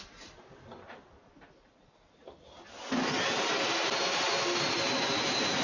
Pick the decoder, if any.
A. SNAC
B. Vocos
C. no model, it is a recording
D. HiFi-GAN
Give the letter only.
C